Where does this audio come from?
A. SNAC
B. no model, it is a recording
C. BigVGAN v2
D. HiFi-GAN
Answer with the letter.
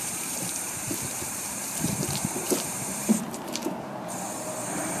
C